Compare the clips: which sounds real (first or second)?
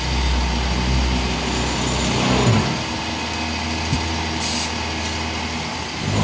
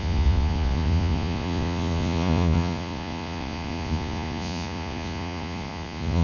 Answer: first